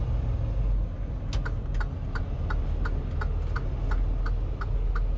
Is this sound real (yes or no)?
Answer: yes